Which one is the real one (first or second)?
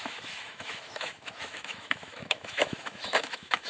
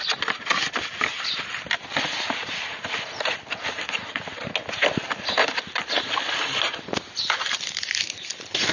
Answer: second